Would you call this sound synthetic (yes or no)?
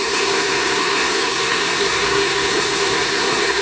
yes